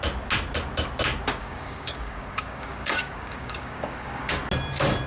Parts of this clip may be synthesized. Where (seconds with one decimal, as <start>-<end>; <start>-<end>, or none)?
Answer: 1.4-4.4

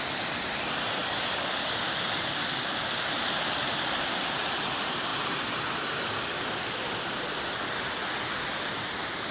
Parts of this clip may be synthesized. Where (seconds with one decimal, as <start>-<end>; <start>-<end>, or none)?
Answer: 1.0-1.5

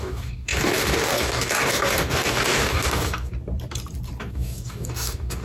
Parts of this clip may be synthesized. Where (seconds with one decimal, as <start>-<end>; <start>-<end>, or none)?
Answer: 0.0-3.3; 4.2-5.4